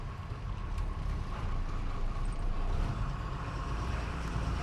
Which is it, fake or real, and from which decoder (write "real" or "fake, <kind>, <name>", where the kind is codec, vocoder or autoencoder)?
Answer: fake, vocoder, BigVGAN v2